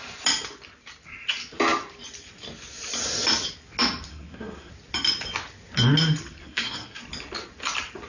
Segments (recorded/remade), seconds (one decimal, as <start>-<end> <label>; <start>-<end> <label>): 0.0-4.1 recorded; 4.1-4.7 remade; 4.7-6.4 recorded; 6.4-7.0 remade; 7.0-8.1 recorded